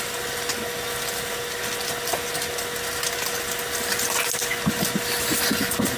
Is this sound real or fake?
real